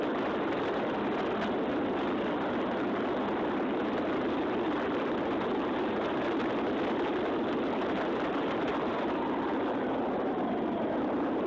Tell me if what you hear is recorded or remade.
recorded